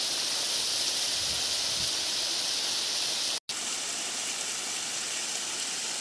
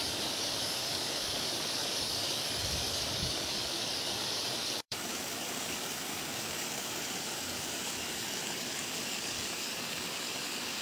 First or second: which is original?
first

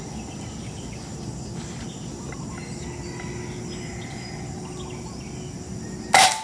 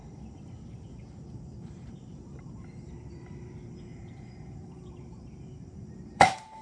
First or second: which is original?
first